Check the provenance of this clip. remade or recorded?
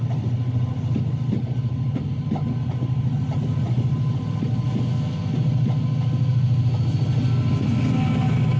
recorded